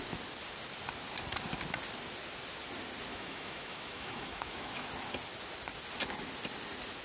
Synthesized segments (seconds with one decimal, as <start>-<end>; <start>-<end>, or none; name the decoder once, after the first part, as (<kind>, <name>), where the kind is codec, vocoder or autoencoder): 3.1-4.9 (autoencoder, DAC-VAE)